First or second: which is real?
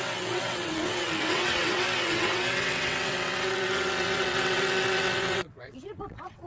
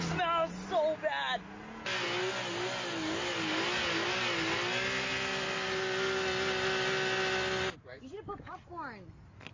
second